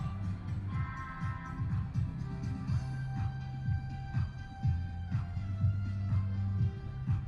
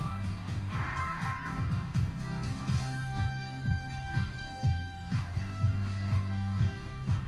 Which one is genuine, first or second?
first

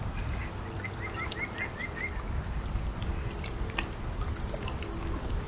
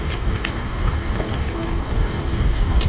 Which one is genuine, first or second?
first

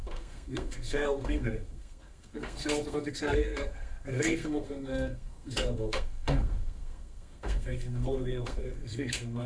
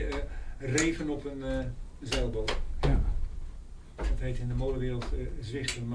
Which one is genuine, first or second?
second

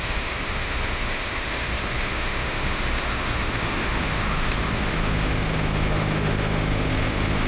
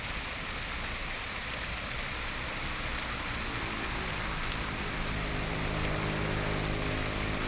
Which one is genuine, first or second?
second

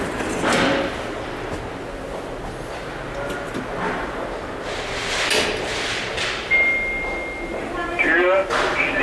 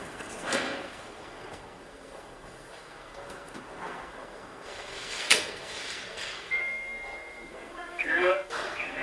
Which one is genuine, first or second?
first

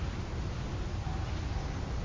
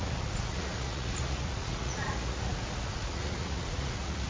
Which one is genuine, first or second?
first